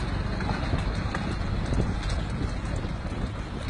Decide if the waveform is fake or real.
real